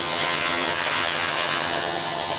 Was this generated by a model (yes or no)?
yes